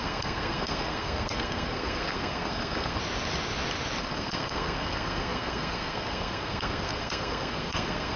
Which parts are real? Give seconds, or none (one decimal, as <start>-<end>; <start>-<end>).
3.0-4.0